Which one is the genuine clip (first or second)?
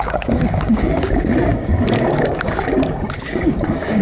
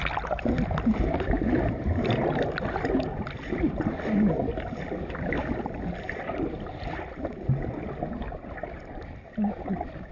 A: second